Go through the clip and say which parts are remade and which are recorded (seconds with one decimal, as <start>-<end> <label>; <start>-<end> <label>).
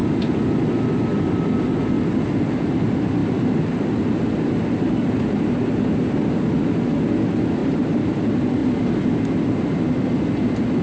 0.0-3.2 recorded; 3.2-5.6 remade; 5.6-7.6 recorded; 7.6-8.2 remade; 8.2-10.8 recorded